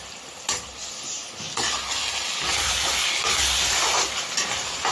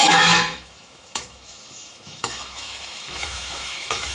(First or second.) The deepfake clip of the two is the second